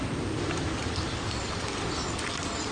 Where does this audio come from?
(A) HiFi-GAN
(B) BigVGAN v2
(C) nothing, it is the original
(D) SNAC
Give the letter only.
C